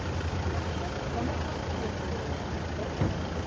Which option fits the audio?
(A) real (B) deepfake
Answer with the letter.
A